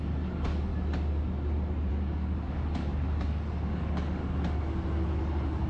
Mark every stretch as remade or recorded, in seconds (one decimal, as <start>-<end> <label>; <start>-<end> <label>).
0.0-0.7 remade; 0.7-1.9 recorded; 1.9-4.2 remade; 4.2-5.2 recorded; 5.2-5.7 remade